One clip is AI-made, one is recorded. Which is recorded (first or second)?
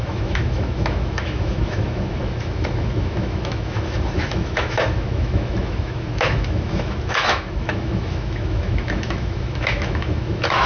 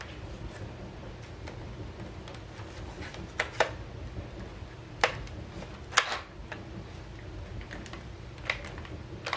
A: second